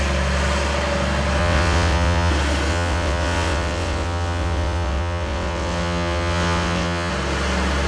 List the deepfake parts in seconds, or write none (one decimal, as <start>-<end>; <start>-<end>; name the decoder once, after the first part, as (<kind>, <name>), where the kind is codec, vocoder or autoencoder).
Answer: 1.4-2.3 (vocoder, WaveNeXt); 2.7-7.1